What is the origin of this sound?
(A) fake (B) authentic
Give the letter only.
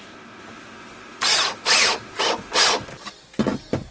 B